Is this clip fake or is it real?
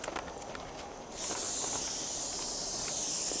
real